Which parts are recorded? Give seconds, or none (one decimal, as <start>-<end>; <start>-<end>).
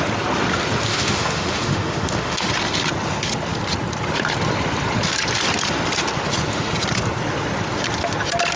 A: 0.0-0.9; 2.5-8.6